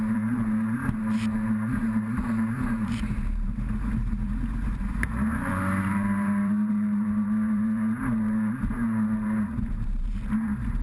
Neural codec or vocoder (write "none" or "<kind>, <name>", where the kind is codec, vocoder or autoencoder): vocoder, BigVGAN v2